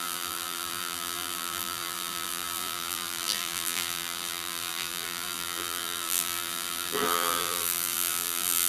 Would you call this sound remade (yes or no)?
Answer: yes